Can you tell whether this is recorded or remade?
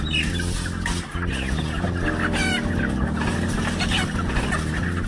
recorded